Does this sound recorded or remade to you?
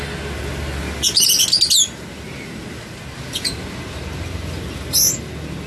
recorded